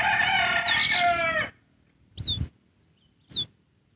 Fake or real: real